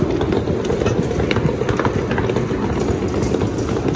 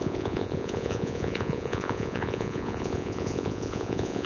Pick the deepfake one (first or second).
second